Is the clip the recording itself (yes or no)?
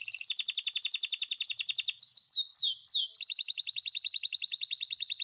yes